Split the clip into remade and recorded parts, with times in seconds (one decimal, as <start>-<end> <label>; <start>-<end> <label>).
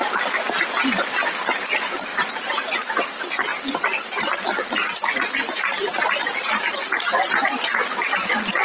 0.0-8.6 recorded